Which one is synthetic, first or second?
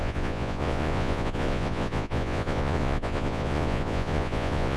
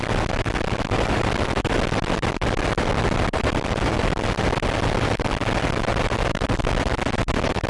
first